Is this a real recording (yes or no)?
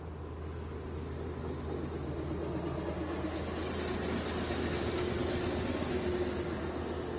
yes